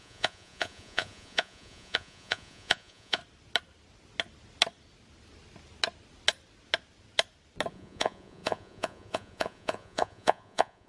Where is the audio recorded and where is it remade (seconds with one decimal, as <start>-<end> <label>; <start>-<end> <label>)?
0.0-3.2 remade; 3.2-7.7 recorded; 7.7-10.9 remade